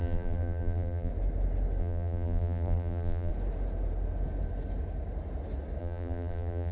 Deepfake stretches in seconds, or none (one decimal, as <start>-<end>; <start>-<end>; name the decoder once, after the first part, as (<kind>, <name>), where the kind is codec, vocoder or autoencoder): 0.0-1.1 (vocoder, BigVGAN v2); 1.8-3.3; 5.8-6.7